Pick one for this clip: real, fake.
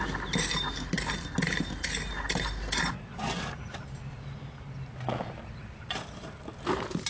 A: real